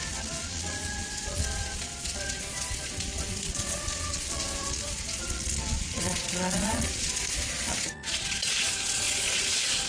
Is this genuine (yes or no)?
no